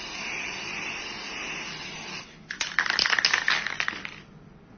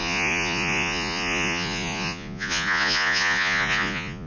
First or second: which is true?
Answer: first